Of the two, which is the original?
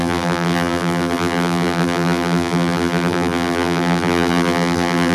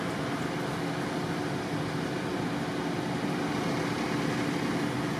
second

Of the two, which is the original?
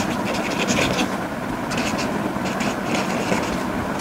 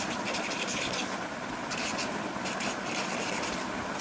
first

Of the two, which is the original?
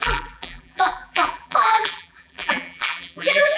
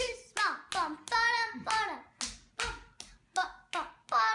second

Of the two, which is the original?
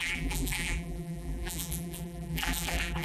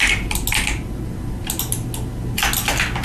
second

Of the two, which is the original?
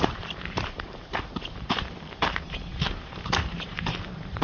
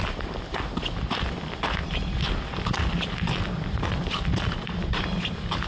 second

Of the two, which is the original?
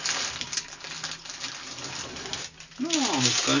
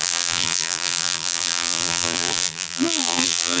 first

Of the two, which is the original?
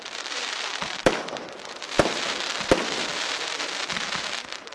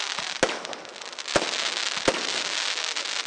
second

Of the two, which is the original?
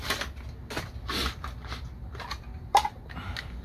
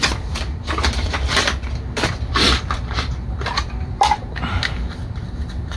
first